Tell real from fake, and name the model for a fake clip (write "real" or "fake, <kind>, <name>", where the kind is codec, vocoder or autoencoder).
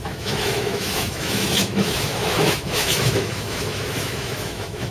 fake, autoencoder, DAC-VAE